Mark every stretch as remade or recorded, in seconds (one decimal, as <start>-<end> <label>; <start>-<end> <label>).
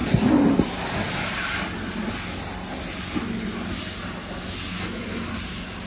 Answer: 0.0-4.7 recorded; 4.7-5.3 remade; 5.3-5.9 recorded